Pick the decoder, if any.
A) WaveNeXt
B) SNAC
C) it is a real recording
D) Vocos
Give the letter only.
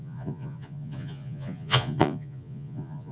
D